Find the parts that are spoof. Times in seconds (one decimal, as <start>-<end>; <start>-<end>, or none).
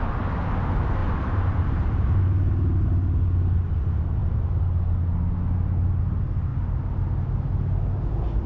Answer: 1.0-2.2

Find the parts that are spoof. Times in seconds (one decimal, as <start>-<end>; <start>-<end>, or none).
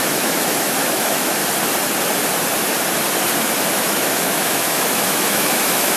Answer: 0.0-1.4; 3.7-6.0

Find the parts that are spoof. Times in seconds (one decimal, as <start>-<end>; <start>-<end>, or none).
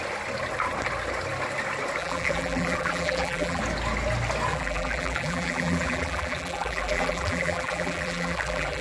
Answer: 2.0-3.6; 4.5-8.8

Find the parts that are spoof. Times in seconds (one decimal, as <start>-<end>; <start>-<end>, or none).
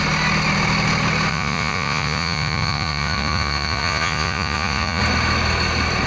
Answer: 1.3-5.0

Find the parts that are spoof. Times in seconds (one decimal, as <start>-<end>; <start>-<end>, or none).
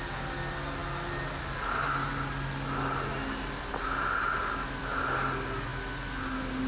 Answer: none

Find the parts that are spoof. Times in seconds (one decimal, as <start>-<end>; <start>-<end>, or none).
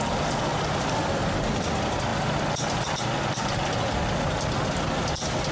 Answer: none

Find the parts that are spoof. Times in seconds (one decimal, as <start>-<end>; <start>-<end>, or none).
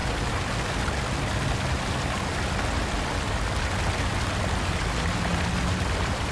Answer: none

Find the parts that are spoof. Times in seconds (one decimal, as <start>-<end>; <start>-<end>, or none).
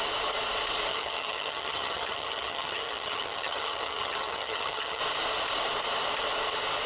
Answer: 0.9-5.0